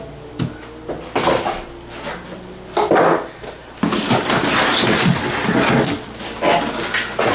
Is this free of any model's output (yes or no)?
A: yes